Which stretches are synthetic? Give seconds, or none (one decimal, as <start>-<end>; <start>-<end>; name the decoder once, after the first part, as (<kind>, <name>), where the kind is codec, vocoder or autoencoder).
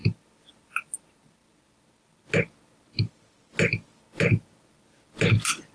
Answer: none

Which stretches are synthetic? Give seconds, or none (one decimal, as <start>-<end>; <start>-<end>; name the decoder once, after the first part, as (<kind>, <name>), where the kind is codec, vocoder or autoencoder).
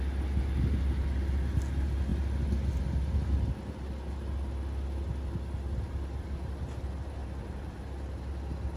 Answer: none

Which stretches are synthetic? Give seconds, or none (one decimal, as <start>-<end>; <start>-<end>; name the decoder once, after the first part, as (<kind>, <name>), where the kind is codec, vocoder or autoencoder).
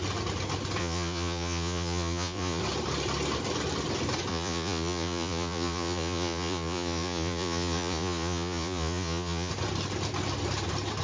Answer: 0.8-2.6 (vocoder, Vocos); 4.3-9.5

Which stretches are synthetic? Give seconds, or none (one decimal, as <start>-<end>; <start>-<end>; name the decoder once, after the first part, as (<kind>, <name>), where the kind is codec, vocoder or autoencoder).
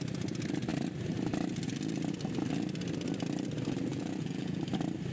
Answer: 3.9-4.6 (vocoder, Vocos)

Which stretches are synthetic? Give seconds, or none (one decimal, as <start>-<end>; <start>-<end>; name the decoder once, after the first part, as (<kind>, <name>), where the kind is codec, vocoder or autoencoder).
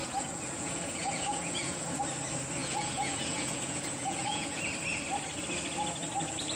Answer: 0.0-2.0 (vocoder, Vocos); 2.6-4.6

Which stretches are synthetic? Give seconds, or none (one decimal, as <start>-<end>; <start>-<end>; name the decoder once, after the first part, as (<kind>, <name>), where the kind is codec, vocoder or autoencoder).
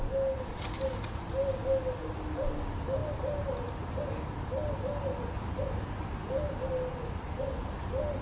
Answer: none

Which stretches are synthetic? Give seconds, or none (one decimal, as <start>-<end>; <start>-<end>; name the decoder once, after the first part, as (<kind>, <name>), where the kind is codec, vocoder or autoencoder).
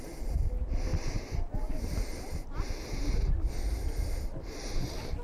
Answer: none